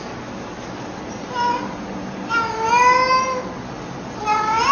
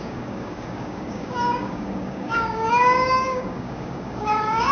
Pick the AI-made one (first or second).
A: second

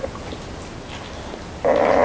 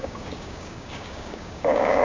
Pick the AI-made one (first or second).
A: second